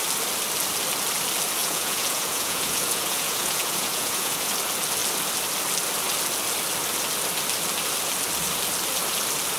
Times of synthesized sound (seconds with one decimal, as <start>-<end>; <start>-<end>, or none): 1.6-4.5